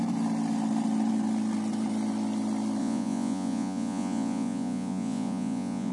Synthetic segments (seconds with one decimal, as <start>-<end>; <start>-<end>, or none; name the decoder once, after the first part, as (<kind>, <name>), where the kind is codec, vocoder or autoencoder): 2.8-5.9 (vocoder, Vocos)